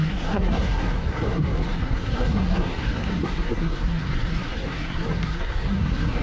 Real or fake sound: fake